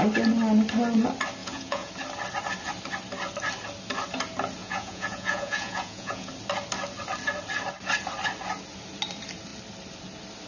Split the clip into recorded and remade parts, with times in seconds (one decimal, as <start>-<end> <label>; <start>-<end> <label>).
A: 0.0-1.4 recorded; 1.4-1.9 remade; 1.9-4.6 recorded; 4.6-6.3 remade; 6.3-10.5 recorded